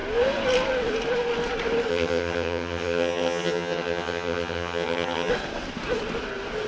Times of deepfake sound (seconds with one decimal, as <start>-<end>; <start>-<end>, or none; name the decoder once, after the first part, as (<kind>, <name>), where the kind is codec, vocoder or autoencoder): 1.9-5.3 (vocoder, HiFi-GAN)